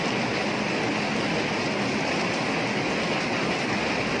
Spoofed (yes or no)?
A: no